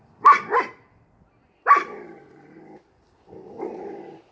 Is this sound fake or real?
fake